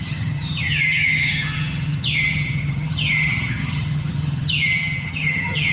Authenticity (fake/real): fake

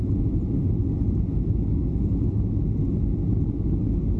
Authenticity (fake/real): real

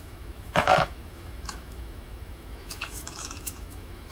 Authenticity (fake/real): fake